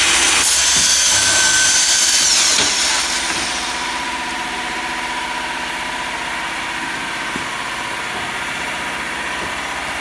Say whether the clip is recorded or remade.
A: recorded